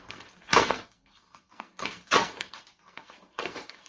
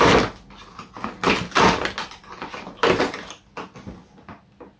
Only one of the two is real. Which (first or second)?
second